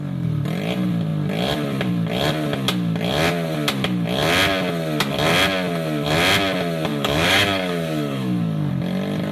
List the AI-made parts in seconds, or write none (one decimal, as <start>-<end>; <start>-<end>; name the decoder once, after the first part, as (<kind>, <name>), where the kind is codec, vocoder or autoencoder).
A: 6.9-8.7 (codec, DAC)